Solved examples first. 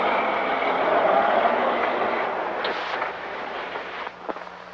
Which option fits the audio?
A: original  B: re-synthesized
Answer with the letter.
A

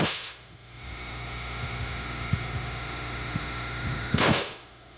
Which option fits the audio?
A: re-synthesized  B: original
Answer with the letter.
A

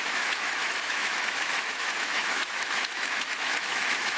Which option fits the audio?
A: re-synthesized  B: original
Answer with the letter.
A